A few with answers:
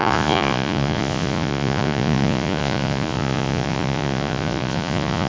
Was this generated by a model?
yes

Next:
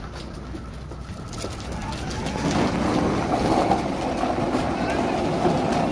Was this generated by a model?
no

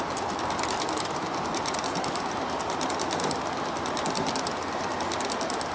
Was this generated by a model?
no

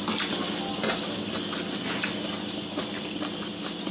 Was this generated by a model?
no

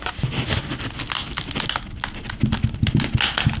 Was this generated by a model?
no